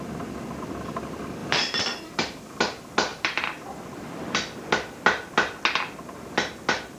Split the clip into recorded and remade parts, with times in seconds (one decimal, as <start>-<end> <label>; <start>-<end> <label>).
0.0-1.4 recorded; 1.4-2.6 remade; 2.6-3.1 recorded; 3.1-5.6 remade; 5.6-7.0 recorded